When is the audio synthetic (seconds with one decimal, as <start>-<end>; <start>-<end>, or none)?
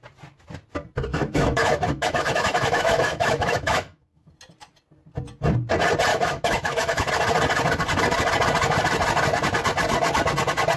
1.1-4.3; 6.1-7.1